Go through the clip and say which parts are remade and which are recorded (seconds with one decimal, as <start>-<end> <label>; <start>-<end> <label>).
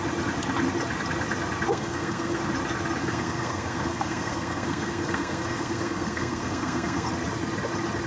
0.0-1.7 recorded; 1.7-2.4 remade; 2.4-3.0 recorded; 3.0-7.1 remade; 7.1-8.1 recorded